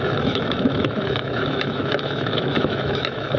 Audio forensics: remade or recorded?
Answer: remade